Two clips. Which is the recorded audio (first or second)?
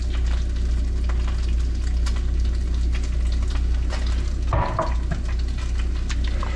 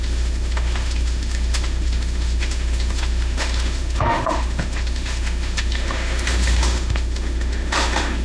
first